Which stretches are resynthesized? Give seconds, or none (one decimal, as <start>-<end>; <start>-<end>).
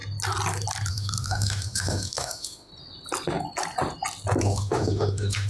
0.9-2.7; 4.4-5.5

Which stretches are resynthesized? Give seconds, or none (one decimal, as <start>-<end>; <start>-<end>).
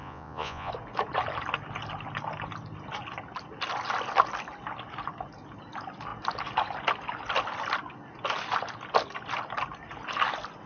0.0-0.7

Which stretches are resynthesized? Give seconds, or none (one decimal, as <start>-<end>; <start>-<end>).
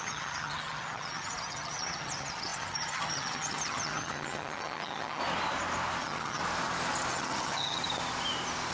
0.0-5.2; 6.0-6.4; 7.1-7.8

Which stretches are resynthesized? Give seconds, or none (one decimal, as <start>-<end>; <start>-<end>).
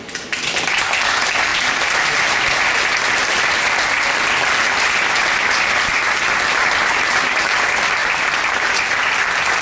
3.2-3.8; 8.0-8.9